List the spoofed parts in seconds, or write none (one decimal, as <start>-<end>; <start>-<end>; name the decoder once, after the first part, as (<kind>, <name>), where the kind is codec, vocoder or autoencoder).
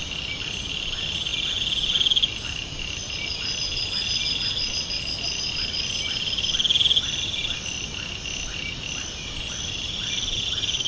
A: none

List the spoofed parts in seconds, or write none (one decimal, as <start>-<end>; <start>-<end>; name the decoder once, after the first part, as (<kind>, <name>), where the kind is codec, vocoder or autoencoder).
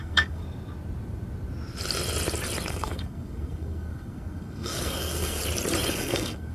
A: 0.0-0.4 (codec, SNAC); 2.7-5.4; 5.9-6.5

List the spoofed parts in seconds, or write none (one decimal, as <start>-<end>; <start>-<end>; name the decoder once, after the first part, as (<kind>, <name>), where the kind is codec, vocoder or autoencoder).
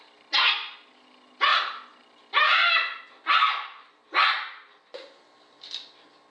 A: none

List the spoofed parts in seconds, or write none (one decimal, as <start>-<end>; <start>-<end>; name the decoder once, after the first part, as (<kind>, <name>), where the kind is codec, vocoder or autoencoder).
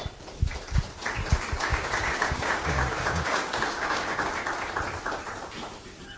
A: 1.7-4.3 (codec, DAC)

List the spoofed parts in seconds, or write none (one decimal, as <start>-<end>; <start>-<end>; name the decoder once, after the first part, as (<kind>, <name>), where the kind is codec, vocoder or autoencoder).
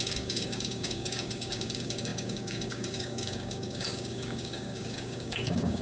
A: 0.0-5.8 (codec, DAC)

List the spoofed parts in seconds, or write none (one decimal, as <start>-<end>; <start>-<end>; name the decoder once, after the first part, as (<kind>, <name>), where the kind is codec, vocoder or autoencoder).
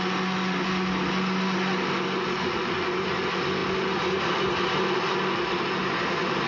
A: none